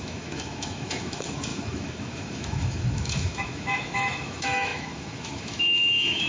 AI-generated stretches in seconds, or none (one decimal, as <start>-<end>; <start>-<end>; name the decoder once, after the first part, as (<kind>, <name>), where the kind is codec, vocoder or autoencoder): 0.0-6.3 (autoencoder, DAC-VAE)